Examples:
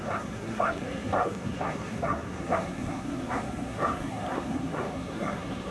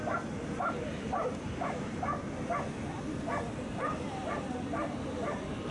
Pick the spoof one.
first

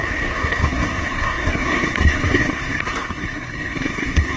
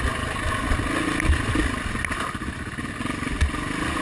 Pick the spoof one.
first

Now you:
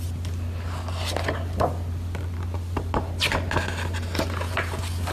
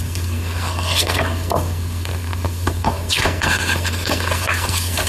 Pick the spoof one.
second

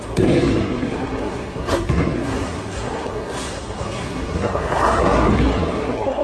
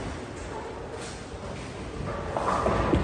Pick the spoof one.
first